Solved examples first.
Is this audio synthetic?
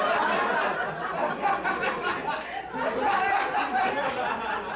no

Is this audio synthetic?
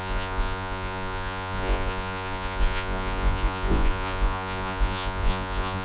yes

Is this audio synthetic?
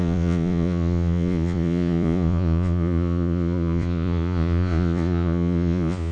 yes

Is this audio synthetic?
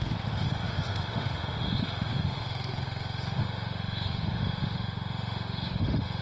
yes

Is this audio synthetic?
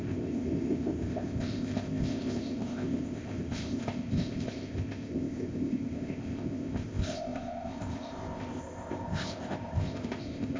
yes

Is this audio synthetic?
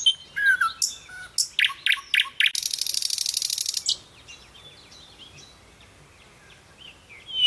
no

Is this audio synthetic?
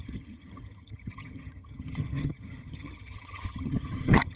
yes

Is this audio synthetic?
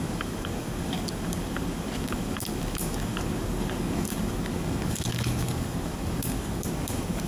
yes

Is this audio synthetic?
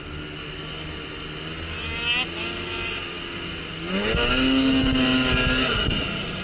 no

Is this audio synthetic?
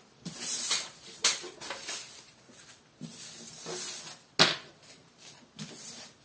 no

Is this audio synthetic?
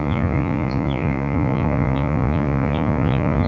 yes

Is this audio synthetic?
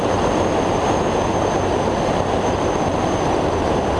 no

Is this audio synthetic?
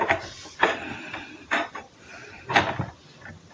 yes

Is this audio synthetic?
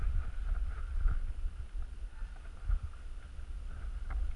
no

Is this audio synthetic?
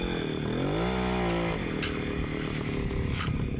no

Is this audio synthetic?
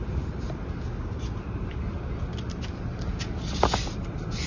no